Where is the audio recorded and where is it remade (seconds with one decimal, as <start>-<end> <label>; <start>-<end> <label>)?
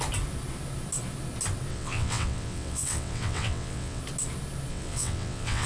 0.0-1.7 recorded; 1.7-4.0 remade; 4.0-4.7 recorded; 4.7-5.7 remade